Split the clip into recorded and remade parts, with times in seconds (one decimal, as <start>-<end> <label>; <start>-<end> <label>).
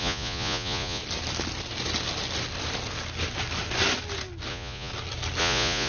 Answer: 0.0-1.0 remade; 1.0-4.5 recorded; 4.5-4.9 remade; 4.9-5.4 recorded; 5.4-5.9 remade